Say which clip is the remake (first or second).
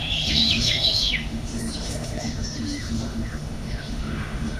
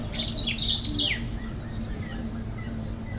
first